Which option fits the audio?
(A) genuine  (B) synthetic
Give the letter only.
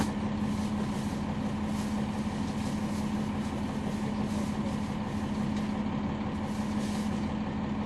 A